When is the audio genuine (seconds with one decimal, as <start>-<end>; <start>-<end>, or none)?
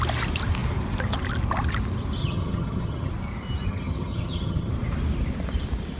0.0-2.2; 3.1-3.7; 4.7-6.0